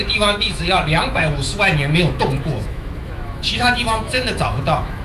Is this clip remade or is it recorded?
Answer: remade